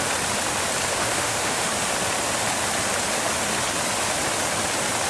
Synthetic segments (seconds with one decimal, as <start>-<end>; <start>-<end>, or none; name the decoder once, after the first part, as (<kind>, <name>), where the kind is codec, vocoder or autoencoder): 1.0-1.7 (autoencoder, DAC-VAE)